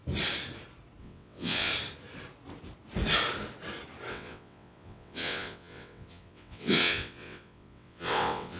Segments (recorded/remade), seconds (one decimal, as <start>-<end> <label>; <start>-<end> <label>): 0.0-1.0 recorded; 1.0-1.7 remade; 1.7-4.1 recorded; 4.1-8.6 remade